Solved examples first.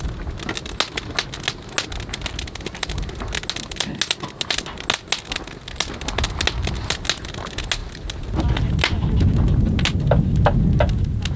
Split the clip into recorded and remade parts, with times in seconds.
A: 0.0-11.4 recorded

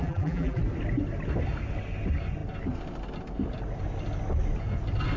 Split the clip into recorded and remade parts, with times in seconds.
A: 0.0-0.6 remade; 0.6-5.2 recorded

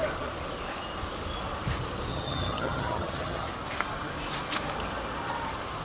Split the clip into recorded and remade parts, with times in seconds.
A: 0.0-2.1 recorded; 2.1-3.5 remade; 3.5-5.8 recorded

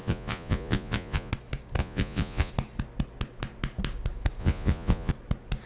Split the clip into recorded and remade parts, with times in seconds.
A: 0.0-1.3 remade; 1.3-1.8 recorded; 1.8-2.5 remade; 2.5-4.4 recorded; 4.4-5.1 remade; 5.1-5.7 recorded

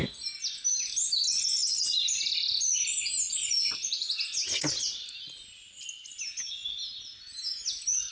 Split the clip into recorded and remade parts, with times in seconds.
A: 0.0-8.1 recorded

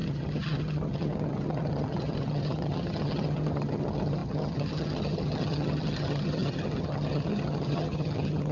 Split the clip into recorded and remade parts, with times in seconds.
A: 0.0-8.5 remade

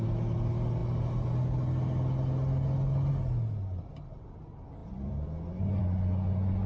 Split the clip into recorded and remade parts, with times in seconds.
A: 0.0-6.7 recorded

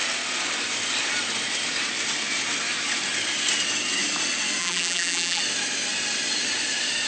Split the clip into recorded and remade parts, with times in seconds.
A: 0.0-4.6 recorded; 4.6-5.4 remade; 5.4-7.1 recorded